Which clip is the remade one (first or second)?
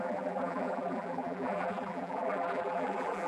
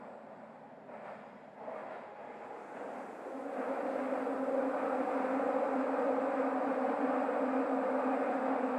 first